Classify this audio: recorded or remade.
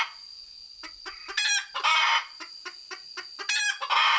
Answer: recorded